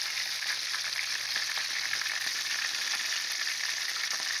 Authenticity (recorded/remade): recorded